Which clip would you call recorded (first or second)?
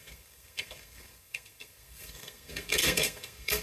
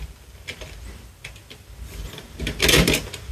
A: second